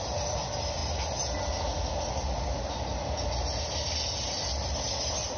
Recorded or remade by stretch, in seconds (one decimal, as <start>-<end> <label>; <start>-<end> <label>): 0.0-5.4 recorded